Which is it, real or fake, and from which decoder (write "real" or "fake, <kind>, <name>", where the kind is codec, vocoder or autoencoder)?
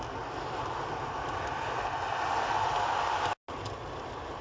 real